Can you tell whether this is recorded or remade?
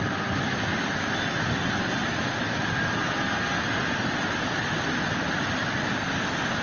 recorded